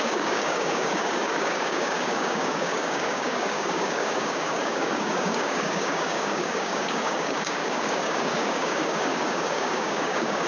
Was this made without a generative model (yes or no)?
no